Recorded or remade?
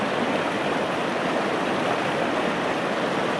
recorded